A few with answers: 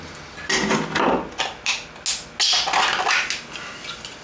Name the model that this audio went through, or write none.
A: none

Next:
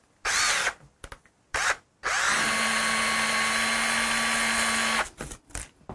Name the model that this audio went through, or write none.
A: none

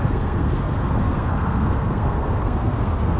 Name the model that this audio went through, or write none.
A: codec, SNAC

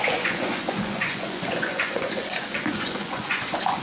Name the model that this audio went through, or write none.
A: vocoder, Vocos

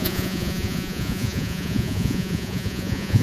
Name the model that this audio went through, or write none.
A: vocoder, Vocos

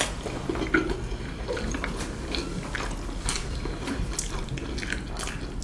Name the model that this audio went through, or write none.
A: none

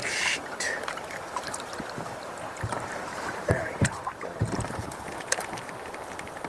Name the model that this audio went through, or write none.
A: vocoder, BigVGAN v2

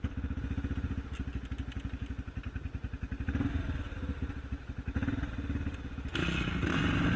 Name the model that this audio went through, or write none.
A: none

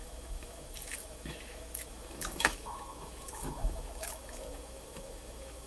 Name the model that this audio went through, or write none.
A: autoencoder, DAC-VAE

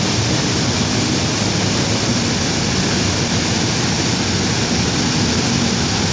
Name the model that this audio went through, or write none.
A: none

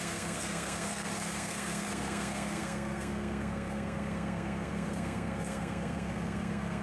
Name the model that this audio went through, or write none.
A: codec, SNAC